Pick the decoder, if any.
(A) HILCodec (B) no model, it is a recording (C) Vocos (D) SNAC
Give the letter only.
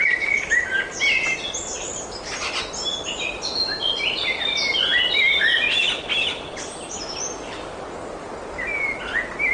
B